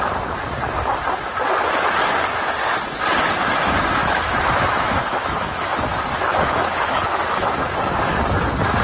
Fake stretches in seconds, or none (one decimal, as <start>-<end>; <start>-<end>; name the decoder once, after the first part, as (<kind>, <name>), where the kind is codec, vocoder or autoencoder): 4.0-7.9 (autoencoder, DAC-VAE)

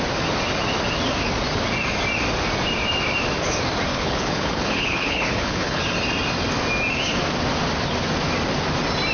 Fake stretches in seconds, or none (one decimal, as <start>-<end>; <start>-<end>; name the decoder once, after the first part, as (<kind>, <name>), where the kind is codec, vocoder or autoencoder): 3.9-5.8 (codec, HILCodec)

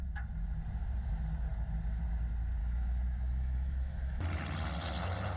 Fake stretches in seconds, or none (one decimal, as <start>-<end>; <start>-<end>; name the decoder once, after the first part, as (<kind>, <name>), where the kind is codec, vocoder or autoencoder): 2.6-4.2 (autoencoder, DAC-VAE)